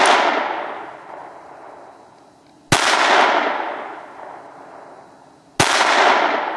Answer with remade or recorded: recorded